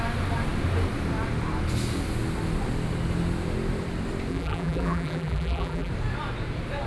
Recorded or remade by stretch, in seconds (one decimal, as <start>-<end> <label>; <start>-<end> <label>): 0.0-4.3 recorded; 4.3-5.9 remade; 5.9-6.9 recorded